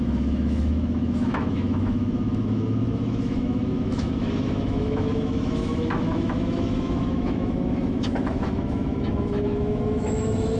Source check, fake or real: fake